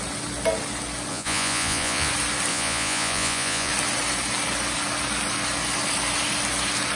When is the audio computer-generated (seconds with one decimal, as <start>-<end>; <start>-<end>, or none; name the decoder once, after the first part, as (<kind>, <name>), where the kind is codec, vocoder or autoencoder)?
1.1-2.1 (vocoder, Vocos); 2.5-3.7